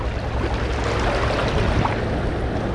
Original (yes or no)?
yes